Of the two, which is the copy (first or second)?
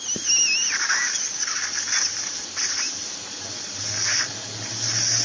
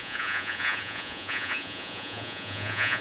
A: second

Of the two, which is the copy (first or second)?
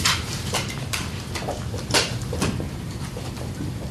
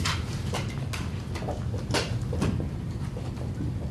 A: first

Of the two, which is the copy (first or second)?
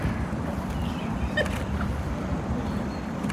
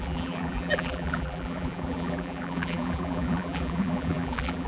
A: second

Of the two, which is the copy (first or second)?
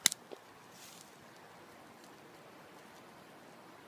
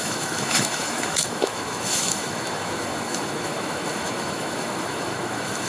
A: second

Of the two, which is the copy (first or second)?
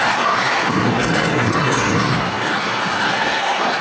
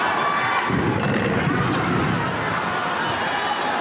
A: first